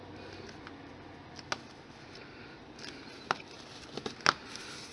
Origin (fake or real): real